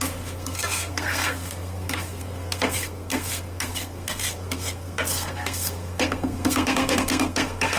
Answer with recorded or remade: remade